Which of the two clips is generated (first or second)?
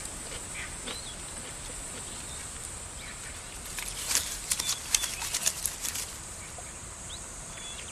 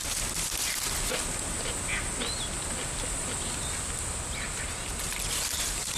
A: first